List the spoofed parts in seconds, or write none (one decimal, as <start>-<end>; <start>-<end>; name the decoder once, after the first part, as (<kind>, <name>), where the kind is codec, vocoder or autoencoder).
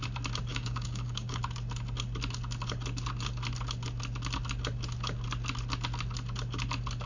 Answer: 0.5-1.4 (codec, DAC)